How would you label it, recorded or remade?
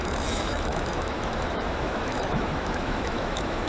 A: remade